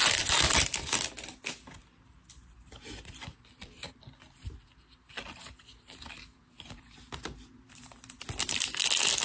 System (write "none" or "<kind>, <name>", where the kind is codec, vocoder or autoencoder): none